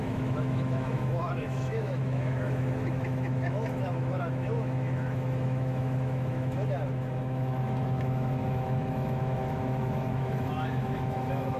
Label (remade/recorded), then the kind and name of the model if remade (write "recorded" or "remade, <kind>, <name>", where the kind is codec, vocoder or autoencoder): remade, autoencoder, DAC-VAE